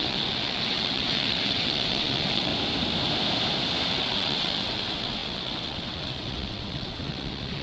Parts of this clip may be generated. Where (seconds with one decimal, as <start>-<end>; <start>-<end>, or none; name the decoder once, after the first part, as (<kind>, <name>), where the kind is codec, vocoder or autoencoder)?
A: 0.0-2.5 (vocoder, WaveNeXt); 3.9-7.6